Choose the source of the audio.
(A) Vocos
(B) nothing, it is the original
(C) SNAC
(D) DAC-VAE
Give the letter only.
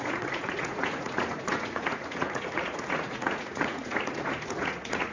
A